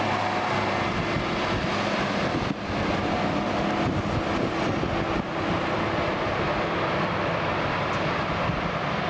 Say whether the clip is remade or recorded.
recorded